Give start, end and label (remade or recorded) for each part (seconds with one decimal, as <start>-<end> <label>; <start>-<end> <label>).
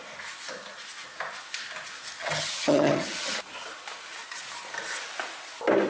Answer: 0.0-2.2 recorded; 2.2-3.4 remade; 3.4-5.9 recorded